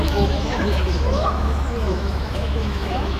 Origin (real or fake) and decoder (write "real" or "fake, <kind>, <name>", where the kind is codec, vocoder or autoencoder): fake, autoencoder, DAC-VAE